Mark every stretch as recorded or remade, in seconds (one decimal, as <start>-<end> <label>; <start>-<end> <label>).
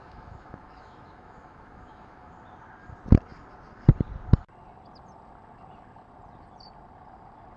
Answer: 0.0-2.3 remade; 2.3-7.6 recorded